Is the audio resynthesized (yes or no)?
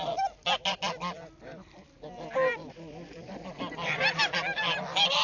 no